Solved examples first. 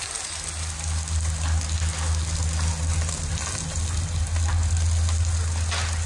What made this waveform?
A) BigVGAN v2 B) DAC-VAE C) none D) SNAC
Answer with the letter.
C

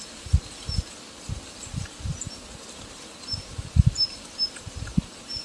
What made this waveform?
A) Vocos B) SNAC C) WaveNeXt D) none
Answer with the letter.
D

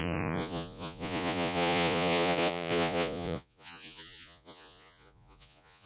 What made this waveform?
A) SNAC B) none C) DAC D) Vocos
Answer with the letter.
D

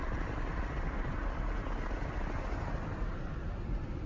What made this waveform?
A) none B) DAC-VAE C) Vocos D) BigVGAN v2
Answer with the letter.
A